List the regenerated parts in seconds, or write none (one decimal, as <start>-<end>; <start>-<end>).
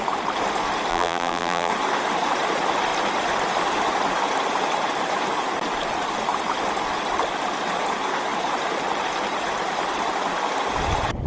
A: 0.9-1.7